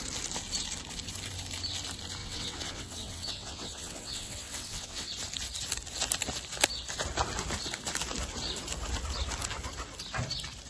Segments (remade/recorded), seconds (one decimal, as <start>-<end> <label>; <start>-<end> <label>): 0.0-2.2 recorded; 2.2-5.1 remade; 5.1-10.7 recorded